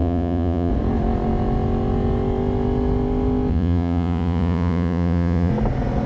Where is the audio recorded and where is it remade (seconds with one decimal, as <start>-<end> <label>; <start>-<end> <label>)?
0.0-0.7 remade; 0.7-3.5 recorded; 3.5-5.5 remade; 5.5-6.1 recorded